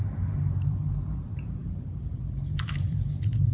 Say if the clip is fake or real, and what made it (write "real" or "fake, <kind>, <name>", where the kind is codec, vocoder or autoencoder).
fake, vocoder, BigVGAN v2